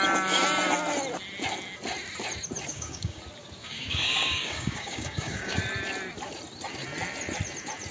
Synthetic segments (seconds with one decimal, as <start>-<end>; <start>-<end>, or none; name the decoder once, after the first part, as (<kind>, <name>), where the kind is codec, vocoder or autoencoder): 2.7-3.2 (codec, DAC); 3.6-5.6